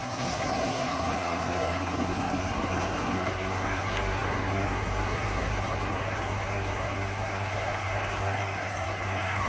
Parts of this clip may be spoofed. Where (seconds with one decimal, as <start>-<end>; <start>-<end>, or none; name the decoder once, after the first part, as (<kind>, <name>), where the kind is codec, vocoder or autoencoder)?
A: 0.0-9.5 (codec, SNAC)